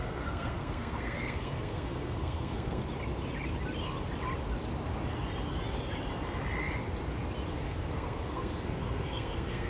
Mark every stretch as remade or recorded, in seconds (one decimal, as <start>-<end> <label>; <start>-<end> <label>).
0.0-2.8 remade; 2.8-7.5 recorded; 7.5-9.7 remade